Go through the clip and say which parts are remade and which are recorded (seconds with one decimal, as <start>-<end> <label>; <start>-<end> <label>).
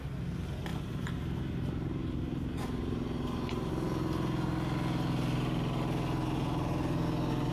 0.0-0.7 recorded; 0.7-3.7 remade; 3.7-7.5 recorded